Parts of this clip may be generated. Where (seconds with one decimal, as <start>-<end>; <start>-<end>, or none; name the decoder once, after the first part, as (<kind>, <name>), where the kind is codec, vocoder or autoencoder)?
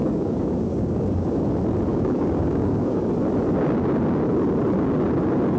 0.0-1.4 (codec, DAC); 1.9-3.1